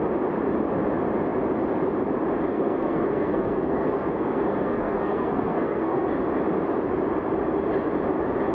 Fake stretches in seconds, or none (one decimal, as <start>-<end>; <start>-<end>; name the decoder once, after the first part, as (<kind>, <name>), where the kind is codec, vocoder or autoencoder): 2.5-6.1 (codec, SNAC)